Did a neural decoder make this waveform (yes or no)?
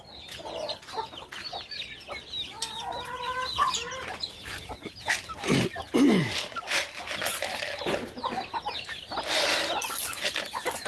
no